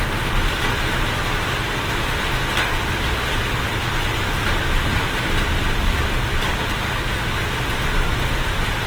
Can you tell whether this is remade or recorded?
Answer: recorded